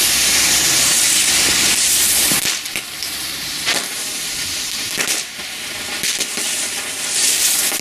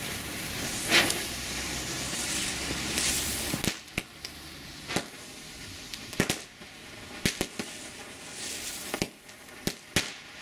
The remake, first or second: first